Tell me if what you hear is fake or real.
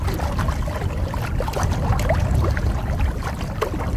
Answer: real